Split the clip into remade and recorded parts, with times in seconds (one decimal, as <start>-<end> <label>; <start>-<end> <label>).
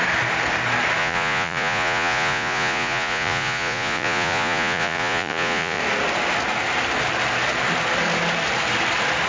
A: 0.0-1.0 recorded; 1.0-5.8 remade; 5.8-9.3 recorded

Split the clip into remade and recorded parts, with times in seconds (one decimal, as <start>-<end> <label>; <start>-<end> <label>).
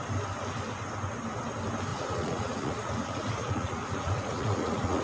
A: 0.0-1.9 recorded; 1.9-5.0 remade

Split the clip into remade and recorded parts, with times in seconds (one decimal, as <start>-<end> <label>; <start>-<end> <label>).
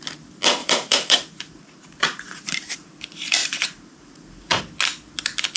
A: 0.0-0.6 recorded; 0.6-2.9 remade; 2.9-3.4 recorded; 3.4-4.6 remade; 4.6-5.6 recorded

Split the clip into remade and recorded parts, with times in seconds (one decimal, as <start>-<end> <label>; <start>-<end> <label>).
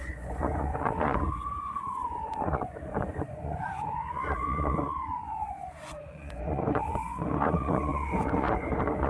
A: 0.0-9.1 remade